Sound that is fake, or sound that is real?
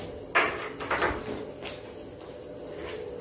real